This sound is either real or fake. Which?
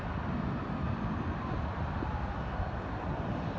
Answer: real